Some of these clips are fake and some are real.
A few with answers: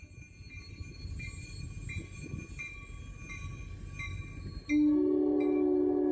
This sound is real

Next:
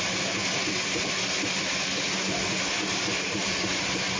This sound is real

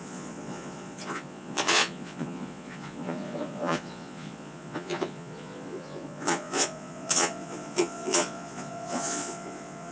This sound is fake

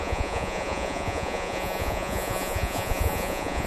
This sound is fake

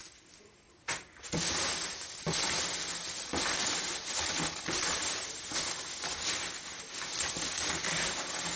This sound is real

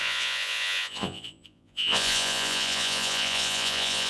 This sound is fake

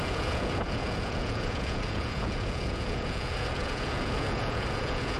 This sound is fake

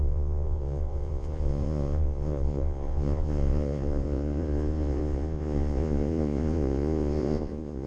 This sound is fake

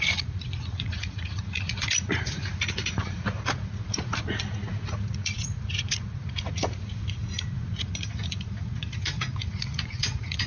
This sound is fake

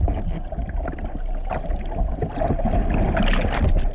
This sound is real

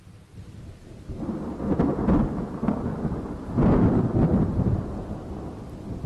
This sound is real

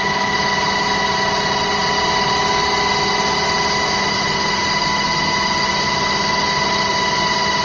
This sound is real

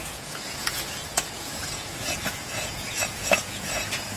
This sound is fake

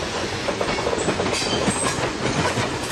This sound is fake